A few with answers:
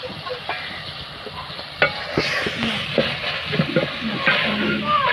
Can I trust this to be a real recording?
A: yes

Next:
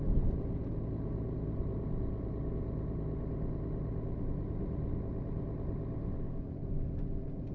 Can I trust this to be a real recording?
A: yes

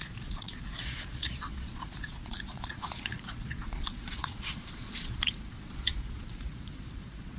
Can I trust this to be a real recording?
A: no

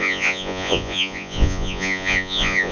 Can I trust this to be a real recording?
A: no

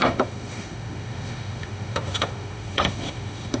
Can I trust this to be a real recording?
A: no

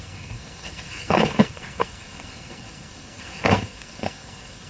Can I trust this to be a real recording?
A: no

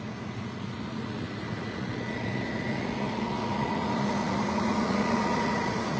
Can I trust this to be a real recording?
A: no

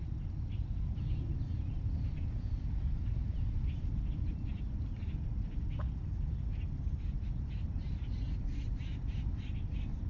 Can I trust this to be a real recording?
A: yes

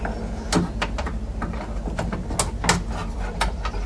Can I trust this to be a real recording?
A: yes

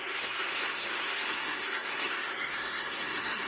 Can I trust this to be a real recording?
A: no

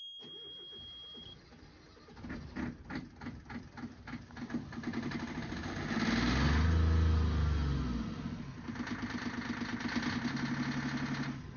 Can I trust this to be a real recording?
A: yes